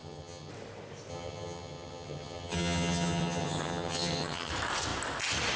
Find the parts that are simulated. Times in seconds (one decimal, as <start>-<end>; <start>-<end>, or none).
0.0-0.5; 1.1-4.5